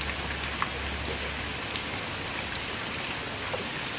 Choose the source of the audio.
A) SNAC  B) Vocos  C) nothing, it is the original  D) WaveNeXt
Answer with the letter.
C